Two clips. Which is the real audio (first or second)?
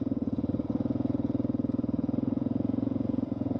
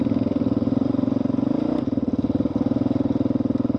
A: second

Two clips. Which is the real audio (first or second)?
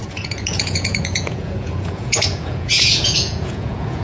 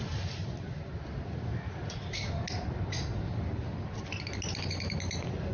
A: second